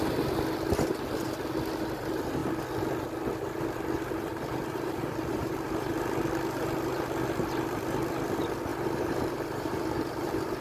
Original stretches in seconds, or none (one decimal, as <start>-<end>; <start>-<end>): 0.0-4.3; 5.9-8.7